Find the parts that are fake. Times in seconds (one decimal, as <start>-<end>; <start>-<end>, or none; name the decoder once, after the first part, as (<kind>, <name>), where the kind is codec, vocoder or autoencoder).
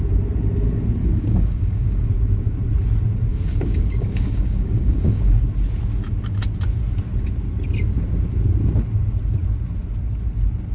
1.0-2.1 (codec, DAC); 3.3-5.4